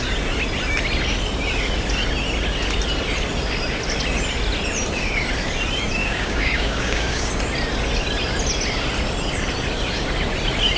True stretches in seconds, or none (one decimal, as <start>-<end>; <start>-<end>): 0.0-6.0; 7.3-10.8